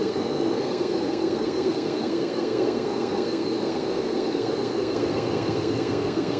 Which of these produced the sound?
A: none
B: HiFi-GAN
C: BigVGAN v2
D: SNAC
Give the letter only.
D